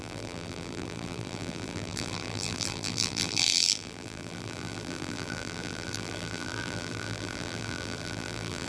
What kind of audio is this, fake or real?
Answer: fake